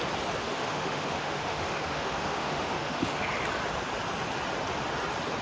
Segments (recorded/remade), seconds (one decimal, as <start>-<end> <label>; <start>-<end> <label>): 0.0-0.5 recorded; 0.5-3.3 remade; 3.3-5.4 recorded